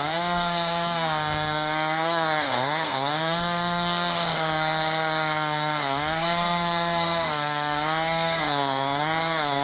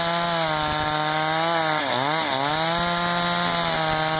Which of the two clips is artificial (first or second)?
first